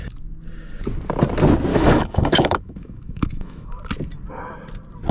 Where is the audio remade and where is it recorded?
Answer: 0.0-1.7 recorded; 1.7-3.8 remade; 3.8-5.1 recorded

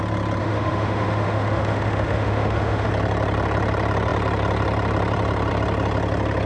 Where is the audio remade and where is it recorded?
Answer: 0.0-0.4 recorded; 0.4-2.9 remade; 2.9-6.5 recorded

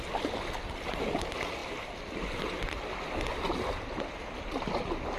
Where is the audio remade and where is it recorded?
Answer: 0.0-5.2 recorded

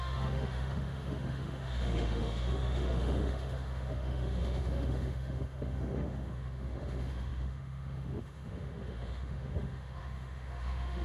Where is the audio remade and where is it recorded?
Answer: 0.0-11.0 remade

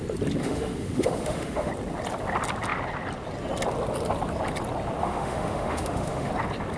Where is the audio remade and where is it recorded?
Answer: 0.0-0.4 recorded; 0.4-1.7 remade; 1.7-5.0 recorded; 5.0-6.3 remade; 6.3-6.8 recorded